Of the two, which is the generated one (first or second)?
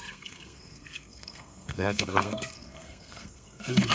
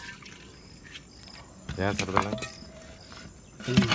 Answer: first